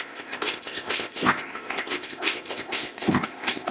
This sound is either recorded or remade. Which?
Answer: remade